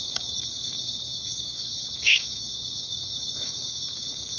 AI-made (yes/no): yes